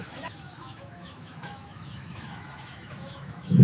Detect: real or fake fake